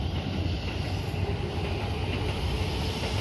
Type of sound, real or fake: real